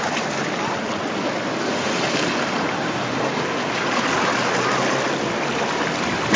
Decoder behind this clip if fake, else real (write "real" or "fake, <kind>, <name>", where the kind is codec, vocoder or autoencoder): real